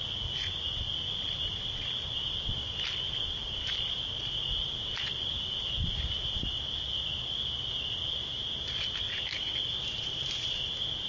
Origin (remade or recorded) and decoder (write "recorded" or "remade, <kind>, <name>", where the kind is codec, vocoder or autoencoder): recorded